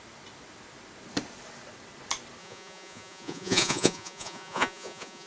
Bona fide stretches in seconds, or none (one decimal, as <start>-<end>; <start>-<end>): 0.0-2.4